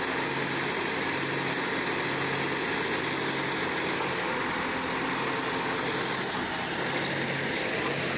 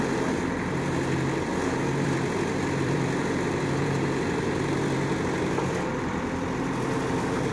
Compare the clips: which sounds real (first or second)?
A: first